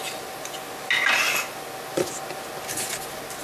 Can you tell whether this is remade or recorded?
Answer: recorded